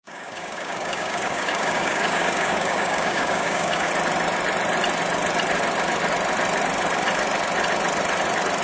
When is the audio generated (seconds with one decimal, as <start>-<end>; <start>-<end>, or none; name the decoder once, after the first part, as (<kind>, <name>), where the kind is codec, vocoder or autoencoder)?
0.0-3.9 (codec, DAC)